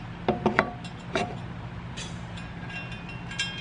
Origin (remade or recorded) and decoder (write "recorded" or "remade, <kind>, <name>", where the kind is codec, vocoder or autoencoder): recorded